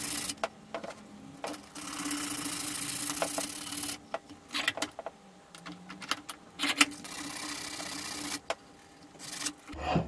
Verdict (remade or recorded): recorded